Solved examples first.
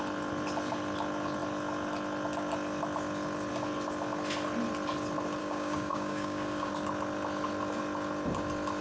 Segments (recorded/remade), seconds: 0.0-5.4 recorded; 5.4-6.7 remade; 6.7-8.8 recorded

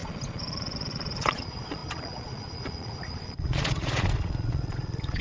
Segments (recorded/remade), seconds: 0.0-5.2 remade

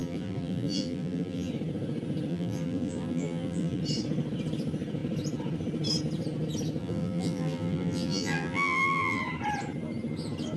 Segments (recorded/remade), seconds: 0.0-1.5 remade; 1.5-2.3 recorded; 2.3-3.8 remade; 3.8-6.8 recorded; 6.8-9.2 remade; 9.2-10.6 recorded

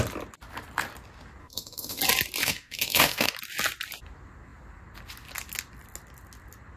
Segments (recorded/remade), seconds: 0.0-1.4 recorded; 1.4-2.0 remade; 2.0-2.4 recorded; 2.4-3.3 remade; 3.3-6.8 recorded

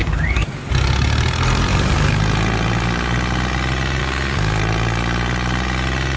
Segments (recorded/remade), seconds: 0.0-0.7 remade; 0.7-1.7 recorded; 1.7-2.2 remade; 2.2-4.0 recorded; 4.0-4.6 remade; 4.6-6.2 recorded

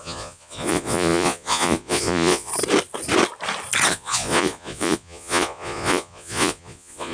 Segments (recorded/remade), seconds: 0.0-2.5 remade; 2.5-3.9 recorded; 3.9-7.1 remade

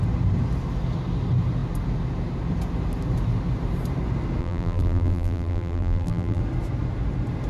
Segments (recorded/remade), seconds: 0.0-4.4 recorded; 4.4-6.4 remade; 6.4-7.5 recorded

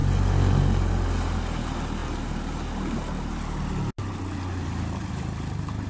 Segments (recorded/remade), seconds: 0.0-5.9 recorded